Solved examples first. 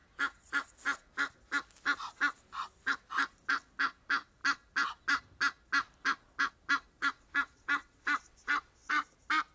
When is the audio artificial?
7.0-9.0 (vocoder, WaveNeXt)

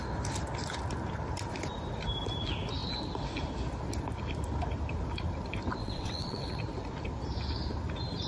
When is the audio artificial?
5.8-6.6 (vocoder, WaveNeXt)

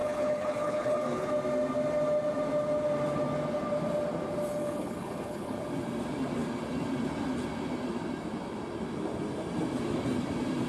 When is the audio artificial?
0.0-1.3 (codec, HILCodec); 4.6-5.6

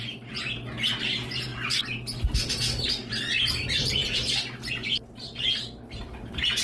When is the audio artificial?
0.0-1.5 (vocoder, BigVGAN v2); 2.9-6.6